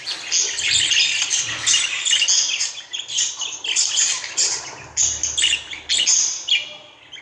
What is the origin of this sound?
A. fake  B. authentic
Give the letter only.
B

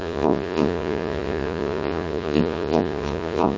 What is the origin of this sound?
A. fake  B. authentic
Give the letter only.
A